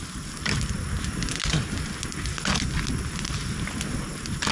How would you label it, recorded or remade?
recorded